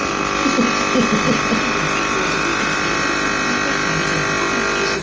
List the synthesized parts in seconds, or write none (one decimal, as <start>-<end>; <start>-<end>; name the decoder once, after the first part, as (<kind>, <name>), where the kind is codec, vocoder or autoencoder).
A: none